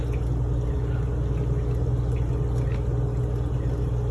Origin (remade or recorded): recorded